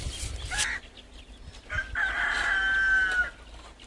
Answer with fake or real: real